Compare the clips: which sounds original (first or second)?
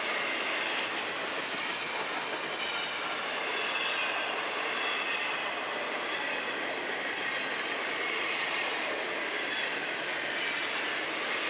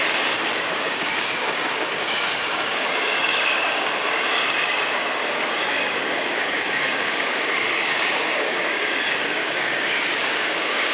first